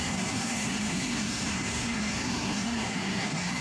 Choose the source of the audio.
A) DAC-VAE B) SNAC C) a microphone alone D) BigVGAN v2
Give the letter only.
B